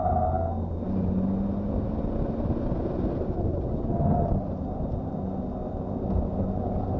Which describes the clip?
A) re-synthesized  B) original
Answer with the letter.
B